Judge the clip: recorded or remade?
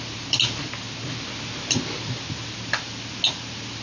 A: recorded